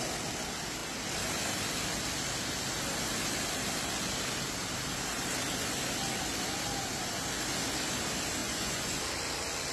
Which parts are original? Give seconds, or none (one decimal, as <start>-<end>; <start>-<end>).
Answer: 0.0-8.4; 9.0-9.7